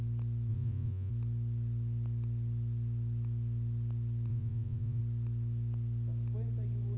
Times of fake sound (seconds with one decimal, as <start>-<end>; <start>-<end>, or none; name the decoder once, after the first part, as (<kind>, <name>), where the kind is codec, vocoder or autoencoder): 0.5-1.1 (vocoder, Vocos); 4.3-5.0